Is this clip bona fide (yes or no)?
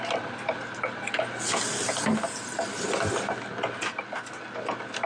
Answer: yes